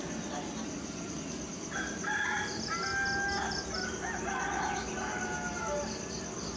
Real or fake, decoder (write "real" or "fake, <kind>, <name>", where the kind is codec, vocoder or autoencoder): real